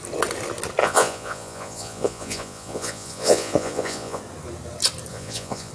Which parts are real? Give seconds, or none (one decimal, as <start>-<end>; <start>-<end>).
0.0-0.8; 4.2-5.1

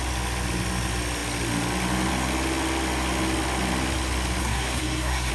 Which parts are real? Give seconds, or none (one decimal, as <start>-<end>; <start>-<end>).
0.0-4.4